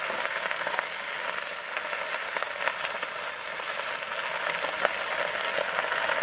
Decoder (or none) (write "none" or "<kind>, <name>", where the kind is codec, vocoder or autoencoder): none